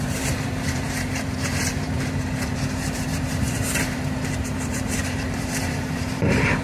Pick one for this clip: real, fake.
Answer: fake